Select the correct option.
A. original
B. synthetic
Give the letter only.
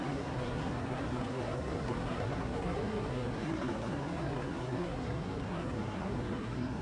B